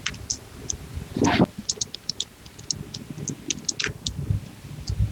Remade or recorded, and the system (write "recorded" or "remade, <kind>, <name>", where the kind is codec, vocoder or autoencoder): recorded